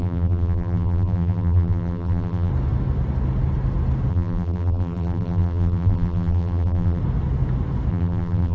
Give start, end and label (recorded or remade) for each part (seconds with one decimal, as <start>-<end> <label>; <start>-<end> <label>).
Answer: 0.0-2.5 remade; 2.5-4.1 recorded; 4.1-7.0 remade; 7.0-7.9 recorded; 7.9-8.5 remade